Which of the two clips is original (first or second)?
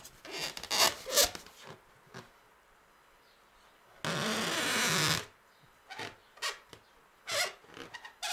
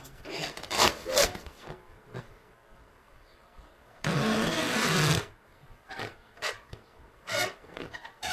first